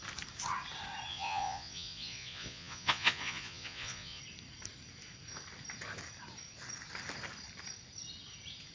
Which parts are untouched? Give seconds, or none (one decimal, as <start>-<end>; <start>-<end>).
0.0-1.1; 4.2-8.7